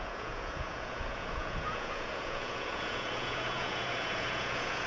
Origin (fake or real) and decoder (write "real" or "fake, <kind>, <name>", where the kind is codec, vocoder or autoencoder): fake, vocoder, Vocos